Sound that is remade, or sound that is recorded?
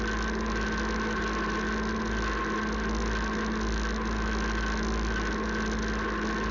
recorded